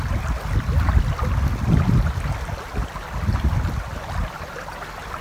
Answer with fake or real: real